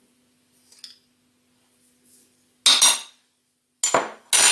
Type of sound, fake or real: real